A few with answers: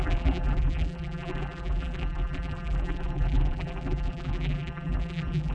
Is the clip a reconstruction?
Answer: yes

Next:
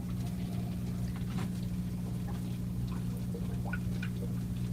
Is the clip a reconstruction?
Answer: no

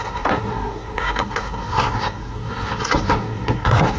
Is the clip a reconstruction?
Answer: yes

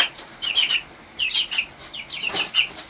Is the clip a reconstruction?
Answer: yes